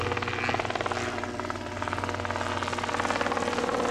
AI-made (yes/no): no